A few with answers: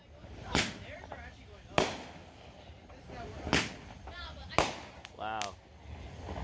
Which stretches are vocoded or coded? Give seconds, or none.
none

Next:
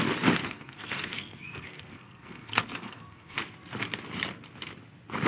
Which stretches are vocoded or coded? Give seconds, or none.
0.4-3.4 (codec, SNAC)

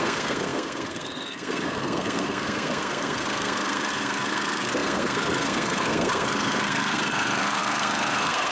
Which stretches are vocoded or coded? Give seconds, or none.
0.0-8.5 (codec, SNAC)

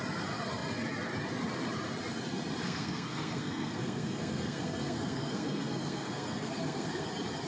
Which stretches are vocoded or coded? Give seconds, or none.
2.6-7.1 (codec, SNAC)